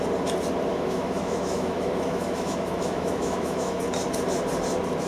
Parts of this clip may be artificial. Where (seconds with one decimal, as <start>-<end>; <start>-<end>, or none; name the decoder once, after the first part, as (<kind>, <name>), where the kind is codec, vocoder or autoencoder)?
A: 0.7-3.8 (autoencoder, DAC-VAE)